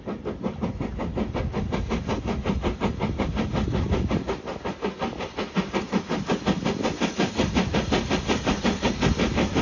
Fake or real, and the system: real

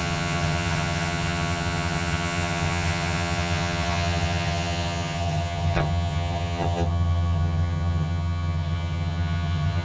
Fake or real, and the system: fake, vocoder, HiFi-GAN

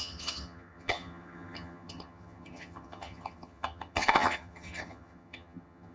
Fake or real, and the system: fake, vocoder, HiFi-GAN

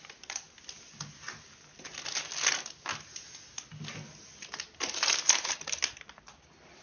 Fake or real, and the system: real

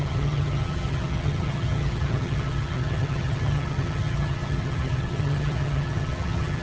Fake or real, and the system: fake, vocoder, HiFi-GAN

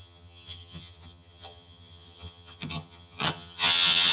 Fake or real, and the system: fake, vocoder, HiFi-GAN